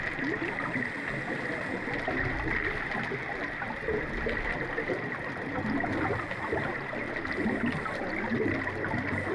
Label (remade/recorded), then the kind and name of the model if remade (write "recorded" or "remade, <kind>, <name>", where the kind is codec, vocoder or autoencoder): recorded